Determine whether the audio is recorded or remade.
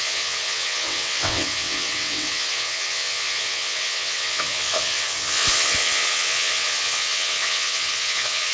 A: remade